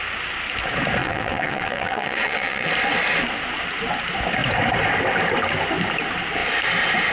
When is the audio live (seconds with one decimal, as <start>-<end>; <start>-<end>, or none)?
0.0-1.0; 2.7-7.1